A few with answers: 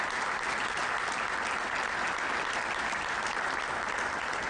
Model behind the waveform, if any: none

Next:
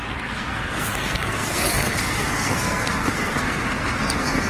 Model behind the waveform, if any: codec, SNAC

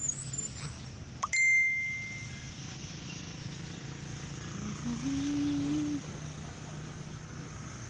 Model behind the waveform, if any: none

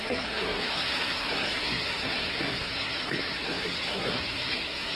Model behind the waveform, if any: codec, SNAC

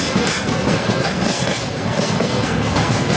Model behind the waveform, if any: codec, SNAC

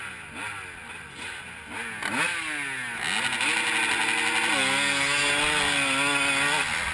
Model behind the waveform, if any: none